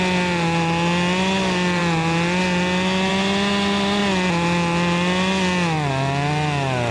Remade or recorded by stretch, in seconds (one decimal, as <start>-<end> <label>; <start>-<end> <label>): 0.0-6.9 recorded